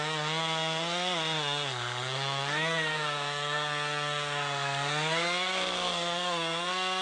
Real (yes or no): no